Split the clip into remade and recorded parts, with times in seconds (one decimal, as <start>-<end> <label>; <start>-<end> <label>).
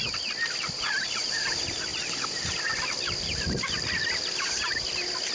0.0-5.3 recorded